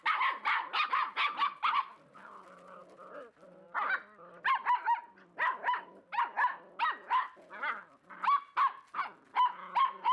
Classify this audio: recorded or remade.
recorded